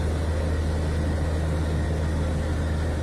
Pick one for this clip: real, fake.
real